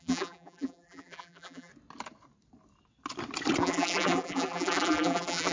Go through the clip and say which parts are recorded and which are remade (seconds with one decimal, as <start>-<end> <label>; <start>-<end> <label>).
0.0-1.7 remade; 1.7-3.6 recorded; 3.6-5.5 remade